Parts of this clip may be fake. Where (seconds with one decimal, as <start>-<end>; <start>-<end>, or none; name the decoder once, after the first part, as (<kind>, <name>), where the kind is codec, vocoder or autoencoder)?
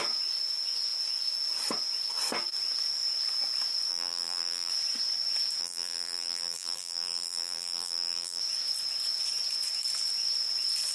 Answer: 3.9-4.7 (vocoder, BigVGAN v2); 5.6-8.4